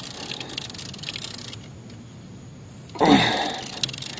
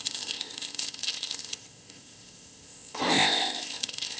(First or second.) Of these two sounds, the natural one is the first